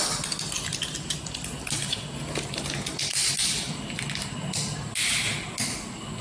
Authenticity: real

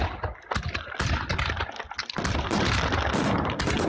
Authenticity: real